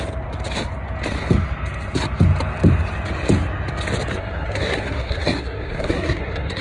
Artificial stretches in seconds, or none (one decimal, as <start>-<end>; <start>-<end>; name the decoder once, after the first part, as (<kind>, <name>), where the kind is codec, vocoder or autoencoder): 4.1-6.6 (codec, SNAC)